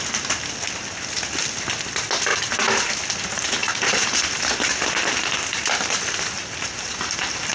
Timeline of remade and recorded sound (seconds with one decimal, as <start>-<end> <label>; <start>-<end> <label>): 0.0-2.3 recorded; 2.3-2.9 remade; 2.9-3.6 recorded; 3.6-4.3 remade; 4.3-6.4 recorded; 6.4-7.5 remade